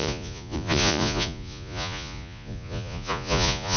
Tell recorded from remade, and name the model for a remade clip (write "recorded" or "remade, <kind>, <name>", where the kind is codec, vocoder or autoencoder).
remade, vocoder, Vocos